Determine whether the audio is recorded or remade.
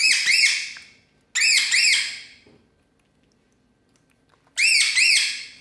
recorded